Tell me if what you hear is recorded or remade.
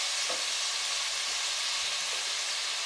recorded